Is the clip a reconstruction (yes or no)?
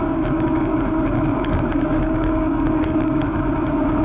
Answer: yes